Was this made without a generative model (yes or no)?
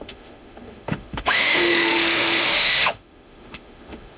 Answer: no